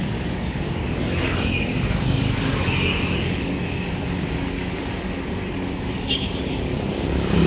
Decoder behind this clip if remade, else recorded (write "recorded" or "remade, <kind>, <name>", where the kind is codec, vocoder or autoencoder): remade, codec, DAC